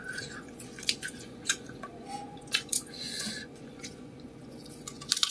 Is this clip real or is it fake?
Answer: fake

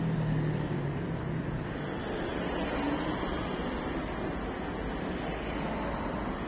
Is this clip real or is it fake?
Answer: real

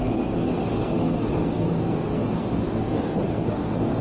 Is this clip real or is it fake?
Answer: fake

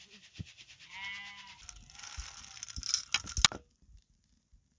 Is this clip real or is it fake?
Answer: real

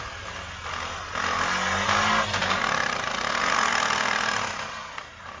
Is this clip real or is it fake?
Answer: real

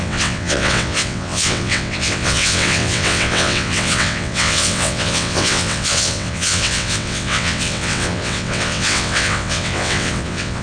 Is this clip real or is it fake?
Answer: fake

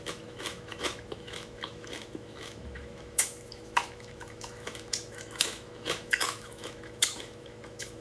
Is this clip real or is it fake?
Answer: fake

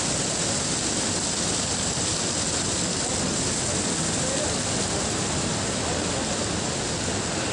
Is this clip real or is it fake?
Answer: real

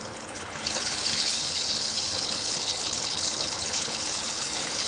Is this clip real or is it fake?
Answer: fake